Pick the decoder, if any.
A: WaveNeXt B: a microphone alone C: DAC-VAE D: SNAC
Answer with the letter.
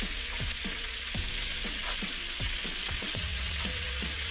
A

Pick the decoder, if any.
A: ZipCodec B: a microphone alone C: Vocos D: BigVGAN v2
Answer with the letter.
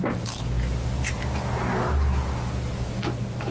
B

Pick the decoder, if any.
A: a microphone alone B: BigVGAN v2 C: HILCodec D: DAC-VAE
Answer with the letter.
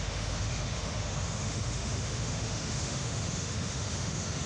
D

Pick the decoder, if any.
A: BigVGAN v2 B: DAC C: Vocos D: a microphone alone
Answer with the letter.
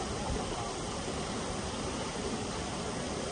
D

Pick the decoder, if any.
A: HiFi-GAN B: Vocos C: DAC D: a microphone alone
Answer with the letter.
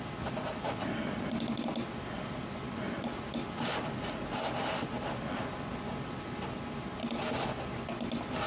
D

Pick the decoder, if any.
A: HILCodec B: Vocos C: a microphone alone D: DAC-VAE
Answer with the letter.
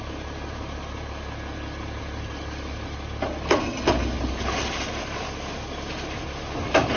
C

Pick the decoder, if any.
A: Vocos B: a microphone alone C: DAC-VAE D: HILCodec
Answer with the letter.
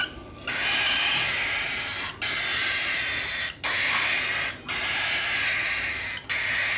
B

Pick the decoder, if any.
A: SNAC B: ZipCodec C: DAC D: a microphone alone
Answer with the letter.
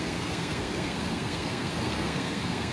A